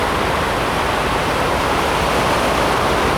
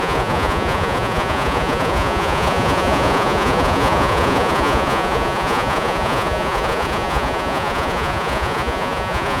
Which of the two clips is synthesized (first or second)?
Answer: second